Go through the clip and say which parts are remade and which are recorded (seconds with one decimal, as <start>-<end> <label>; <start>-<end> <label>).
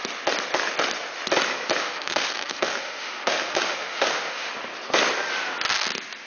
0.0-1.8 recorded; 1.8-4.5 remade; 4.5-6.3 recorded